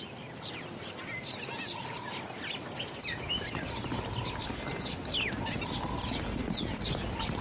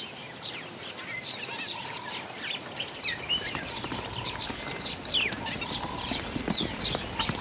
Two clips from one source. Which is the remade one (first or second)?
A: second